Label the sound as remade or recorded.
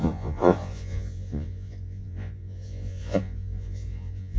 remade